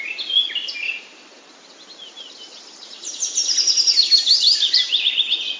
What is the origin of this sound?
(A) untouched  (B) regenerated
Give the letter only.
A